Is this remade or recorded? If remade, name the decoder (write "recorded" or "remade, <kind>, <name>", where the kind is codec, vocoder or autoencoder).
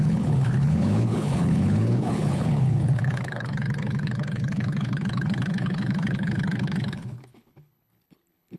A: remade, codec, HILCodec